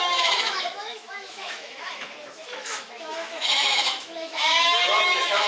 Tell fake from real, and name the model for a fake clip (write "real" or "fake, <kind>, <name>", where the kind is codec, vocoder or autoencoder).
fake, autoencoder, DAC-VAE